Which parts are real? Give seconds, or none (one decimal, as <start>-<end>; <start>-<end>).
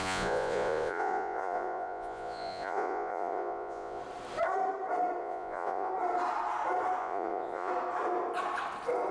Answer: 4.0-5.2; 5.9-7.0; 7.7-9.1